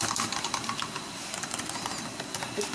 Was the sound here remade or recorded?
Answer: recorded